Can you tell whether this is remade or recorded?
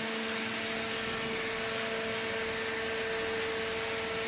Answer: recorded